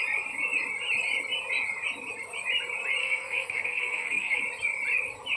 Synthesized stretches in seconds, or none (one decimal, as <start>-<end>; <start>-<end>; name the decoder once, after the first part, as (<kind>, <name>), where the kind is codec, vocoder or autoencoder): 3.0-4.4 (codec, SNAC)